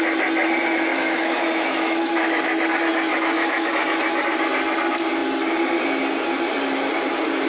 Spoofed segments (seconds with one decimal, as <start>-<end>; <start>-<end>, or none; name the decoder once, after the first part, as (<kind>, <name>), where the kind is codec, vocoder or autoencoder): 0.9-2.7 (autoencoder, DAC-VAE); 3.1-3.7